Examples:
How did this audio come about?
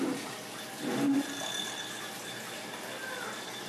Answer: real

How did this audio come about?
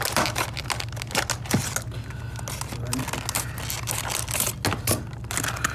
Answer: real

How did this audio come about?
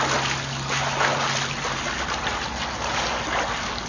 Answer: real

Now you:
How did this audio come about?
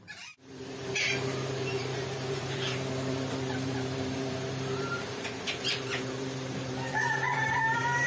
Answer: fake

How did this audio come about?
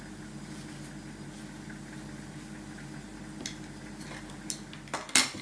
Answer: real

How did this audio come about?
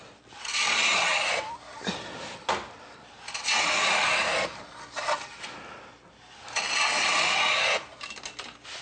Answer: real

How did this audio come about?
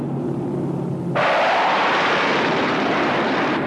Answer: real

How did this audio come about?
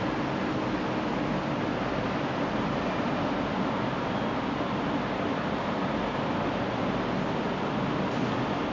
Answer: real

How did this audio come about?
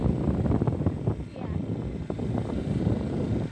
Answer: real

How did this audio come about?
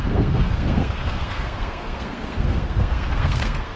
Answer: fake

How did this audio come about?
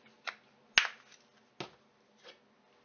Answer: real